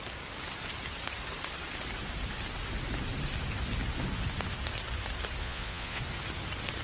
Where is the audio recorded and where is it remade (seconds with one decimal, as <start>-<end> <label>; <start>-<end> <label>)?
0.0-5.4 recorded; 5.4-6.0 remade; 6.0-6.8 recorded